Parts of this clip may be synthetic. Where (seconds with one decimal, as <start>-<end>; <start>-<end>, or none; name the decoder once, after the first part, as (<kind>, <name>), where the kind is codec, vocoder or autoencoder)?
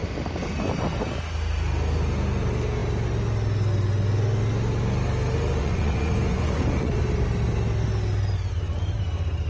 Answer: 5.6-7.0 (vocoder, Vocos)